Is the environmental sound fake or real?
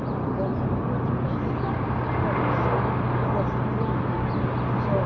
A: real